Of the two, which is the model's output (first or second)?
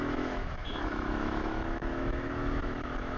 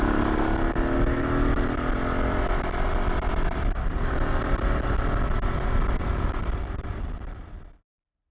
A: first